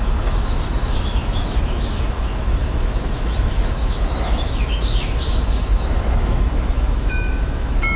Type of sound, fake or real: fake